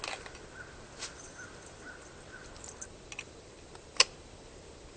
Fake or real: real